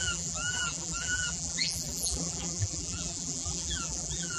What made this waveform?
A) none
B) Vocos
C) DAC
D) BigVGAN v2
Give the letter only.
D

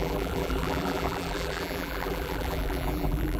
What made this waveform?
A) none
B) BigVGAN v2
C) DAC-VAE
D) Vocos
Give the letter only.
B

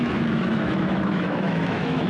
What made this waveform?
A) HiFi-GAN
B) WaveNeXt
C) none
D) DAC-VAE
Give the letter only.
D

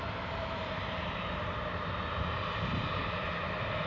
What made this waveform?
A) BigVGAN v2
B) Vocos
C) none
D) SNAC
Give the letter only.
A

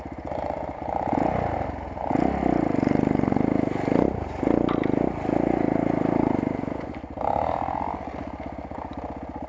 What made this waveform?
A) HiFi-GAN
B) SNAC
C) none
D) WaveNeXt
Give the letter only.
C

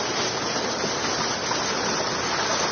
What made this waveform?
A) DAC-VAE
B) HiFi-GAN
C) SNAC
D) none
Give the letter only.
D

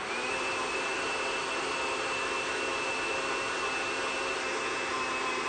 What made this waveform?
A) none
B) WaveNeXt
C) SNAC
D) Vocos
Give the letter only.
A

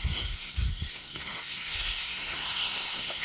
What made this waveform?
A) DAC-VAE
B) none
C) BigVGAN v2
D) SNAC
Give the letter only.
D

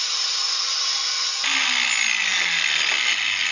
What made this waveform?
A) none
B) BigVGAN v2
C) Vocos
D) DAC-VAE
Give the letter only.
A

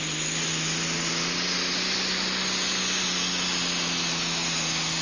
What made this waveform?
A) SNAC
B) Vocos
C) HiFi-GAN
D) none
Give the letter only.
D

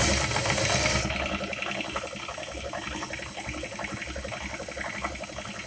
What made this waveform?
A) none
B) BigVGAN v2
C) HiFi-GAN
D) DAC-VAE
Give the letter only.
A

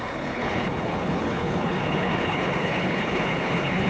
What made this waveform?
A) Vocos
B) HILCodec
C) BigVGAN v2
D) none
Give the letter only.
B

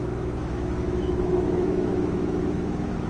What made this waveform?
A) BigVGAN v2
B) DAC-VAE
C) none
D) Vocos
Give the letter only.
B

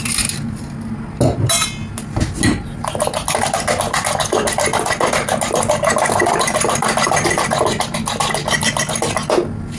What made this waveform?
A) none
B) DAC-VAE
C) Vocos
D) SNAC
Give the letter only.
A